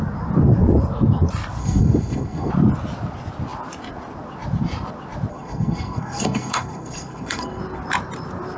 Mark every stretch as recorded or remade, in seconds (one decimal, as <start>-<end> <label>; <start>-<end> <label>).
0.0-1.6 recorded; 1.6-2.5 remade; 2.5-5.3 recorded; 5.3-7.6 remade; 7.6-8.6 recorded

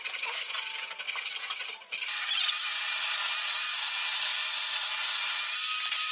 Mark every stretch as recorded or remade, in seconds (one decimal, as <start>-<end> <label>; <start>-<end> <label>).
0.0-6.1 recorded